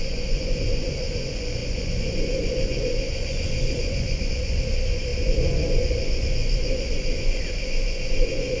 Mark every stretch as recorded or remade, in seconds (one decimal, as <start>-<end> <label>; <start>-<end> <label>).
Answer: 0.0-8.6 remade